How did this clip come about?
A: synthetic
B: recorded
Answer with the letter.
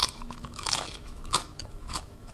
A